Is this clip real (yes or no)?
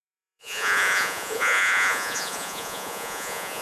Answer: no